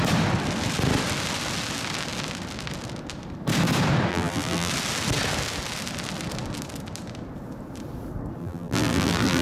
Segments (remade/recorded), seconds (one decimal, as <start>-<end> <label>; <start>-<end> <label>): 0.0-4.1 recorded; 4.1-4.7 remade; 4.7-8.4 recorded; 8.4-9.4 remade